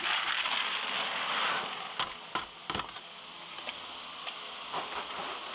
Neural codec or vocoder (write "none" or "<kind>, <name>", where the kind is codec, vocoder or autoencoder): none